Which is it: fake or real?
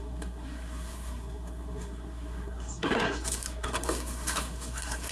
fake